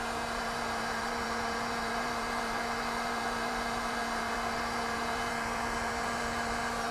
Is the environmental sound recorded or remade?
remade